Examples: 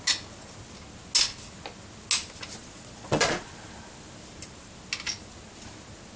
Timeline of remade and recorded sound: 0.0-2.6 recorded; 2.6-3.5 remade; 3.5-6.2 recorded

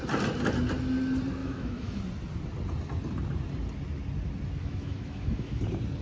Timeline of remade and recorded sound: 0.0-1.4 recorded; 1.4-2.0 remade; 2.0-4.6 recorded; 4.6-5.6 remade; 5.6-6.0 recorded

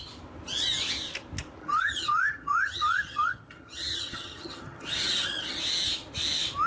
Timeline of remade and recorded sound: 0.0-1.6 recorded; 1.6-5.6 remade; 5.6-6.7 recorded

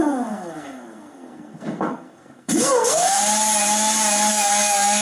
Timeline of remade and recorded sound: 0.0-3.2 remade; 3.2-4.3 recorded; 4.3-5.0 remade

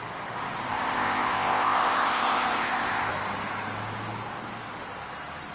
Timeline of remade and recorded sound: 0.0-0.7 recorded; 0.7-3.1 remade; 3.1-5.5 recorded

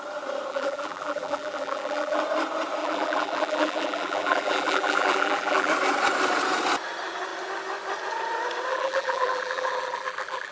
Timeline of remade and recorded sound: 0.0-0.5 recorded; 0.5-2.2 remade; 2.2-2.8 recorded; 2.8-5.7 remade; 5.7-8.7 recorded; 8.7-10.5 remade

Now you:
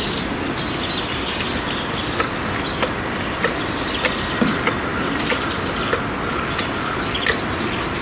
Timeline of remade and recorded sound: 0.0-4.9 recorded; 4.9-5.5 remade; 5.5-8.0 recorded